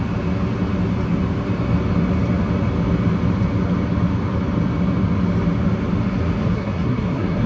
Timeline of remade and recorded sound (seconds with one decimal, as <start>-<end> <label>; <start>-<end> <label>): 0.0-6.4 recorded; 6.4-7.5 remade